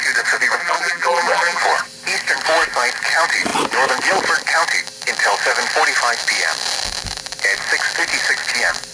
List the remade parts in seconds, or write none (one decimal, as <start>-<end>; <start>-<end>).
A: 0.6-1.6